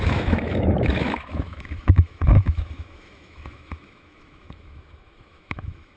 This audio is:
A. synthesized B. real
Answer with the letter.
A